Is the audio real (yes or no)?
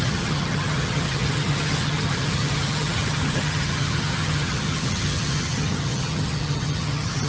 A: no